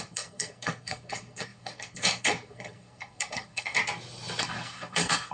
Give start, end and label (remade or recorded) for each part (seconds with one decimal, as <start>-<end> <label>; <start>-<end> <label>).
0.0-3.8 remade; 3.8-4.4 recorded; 4.4-5.3 remade